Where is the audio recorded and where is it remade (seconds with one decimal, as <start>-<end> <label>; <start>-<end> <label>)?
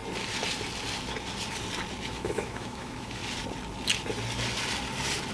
0.0-2.1 recorded; 2.1-3.2 remade; 3.2-5.3 recorded